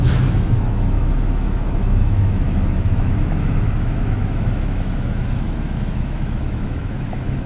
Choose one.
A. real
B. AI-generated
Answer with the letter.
B